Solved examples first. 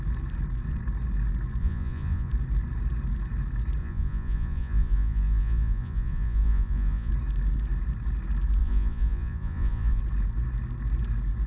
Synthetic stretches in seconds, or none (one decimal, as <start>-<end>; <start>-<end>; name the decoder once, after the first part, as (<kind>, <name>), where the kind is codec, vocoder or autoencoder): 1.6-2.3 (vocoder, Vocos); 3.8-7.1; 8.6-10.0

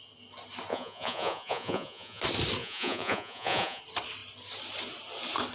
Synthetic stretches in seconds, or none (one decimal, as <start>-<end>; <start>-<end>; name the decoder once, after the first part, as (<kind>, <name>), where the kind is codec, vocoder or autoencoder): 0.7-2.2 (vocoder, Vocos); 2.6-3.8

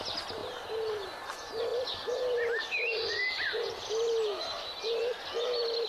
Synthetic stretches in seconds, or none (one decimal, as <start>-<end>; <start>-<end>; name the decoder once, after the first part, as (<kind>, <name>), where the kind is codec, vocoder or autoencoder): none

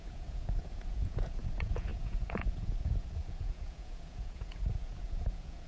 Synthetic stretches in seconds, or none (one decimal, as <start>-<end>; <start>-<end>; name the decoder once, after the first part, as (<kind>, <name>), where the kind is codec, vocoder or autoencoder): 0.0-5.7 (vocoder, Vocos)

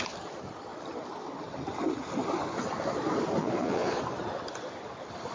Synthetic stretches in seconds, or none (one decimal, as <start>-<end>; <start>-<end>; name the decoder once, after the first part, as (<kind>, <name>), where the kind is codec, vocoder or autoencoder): 3.4-4.0 (vocoder, Vocos)

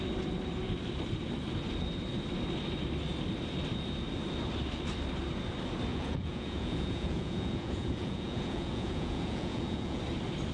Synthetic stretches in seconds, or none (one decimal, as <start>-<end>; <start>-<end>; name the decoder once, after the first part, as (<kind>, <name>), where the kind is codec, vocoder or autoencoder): 5.9-10.0 (vocoder, Vocos)

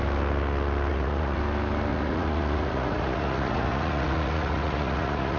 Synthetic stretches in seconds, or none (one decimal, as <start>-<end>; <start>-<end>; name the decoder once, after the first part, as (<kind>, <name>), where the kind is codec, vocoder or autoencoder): 0.9-1.4 (vocoder, Vocos); 1.9-5.4

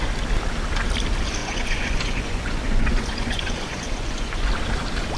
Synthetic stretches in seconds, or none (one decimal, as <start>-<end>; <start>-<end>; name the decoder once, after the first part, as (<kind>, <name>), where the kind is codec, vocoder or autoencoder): 1.4-4.5 (vocoder, Vocos)